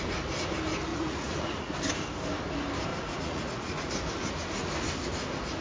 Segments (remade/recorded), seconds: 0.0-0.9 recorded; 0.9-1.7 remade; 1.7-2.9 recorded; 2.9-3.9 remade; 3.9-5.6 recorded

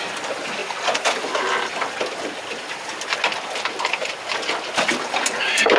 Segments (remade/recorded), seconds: 0.0-5.8 recorded

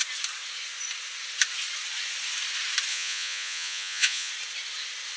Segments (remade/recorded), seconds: 0.0-2.9 recorded; 2.9-4.3 remade; 4.3-5.2 recorded

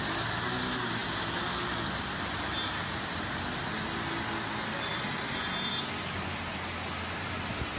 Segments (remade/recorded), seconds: 0.0-7.8 recorded